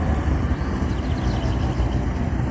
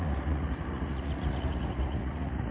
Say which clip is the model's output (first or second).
second